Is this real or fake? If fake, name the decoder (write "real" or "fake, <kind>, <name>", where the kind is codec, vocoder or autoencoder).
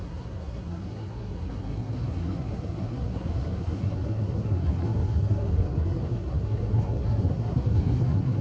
fake, codec, SNAC